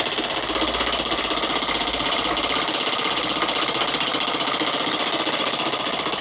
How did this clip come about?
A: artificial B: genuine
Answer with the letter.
B